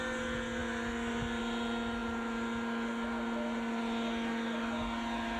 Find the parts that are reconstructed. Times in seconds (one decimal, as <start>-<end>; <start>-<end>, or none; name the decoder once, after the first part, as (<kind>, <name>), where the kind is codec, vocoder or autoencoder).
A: none